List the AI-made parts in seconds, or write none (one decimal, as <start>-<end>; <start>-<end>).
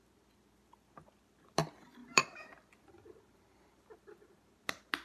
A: 2.0-3.7